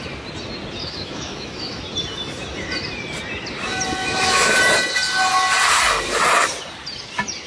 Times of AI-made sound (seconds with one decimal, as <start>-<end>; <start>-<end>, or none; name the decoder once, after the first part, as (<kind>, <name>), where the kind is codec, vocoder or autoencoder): 0.8-1.8 (autoencoder, DAC-VAE); 4.0-4.6